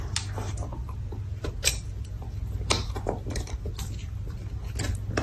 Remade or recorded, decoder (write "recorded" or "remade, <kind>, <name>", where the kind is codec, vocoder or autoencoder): recorded